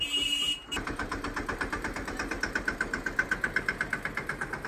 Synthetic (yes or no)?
yes